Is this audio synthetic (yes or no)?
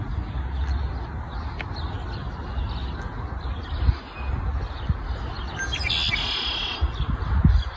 no